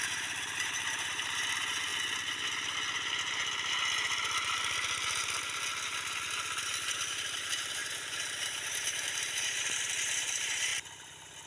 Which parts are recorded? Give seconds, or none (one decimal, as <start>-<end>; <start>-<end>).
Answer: 1.9-6.6; 10.7-11.5